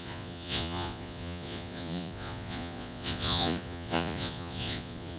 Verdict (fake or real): fake